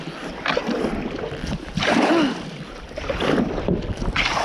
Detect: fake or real real